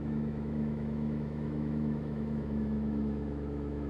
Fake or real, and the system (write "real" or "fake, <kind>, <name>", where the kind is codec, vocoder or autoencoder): fake, autoencoder, DAC-VAE